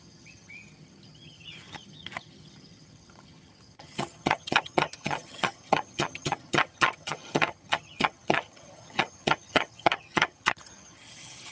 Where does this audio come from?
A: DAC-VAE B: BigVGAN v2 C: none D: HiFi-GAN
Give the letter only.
D